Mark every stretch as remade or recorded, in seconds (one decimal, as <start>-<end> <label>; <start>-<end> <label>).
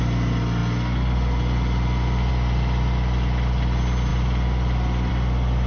0.0-5.7 recorded